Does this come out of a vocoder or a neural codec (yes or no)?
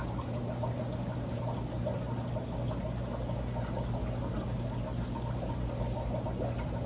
no